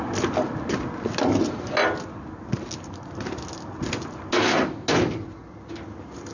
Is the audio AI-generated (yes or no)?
no